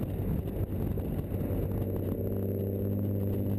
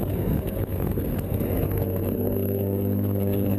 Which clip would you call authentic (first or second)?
first